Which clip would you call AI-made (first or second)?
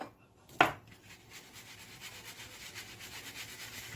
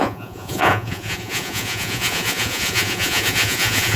second